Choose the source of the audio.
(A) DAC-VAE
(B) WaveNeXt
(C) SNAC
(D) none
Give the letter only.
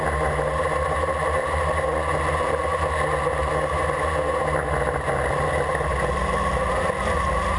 D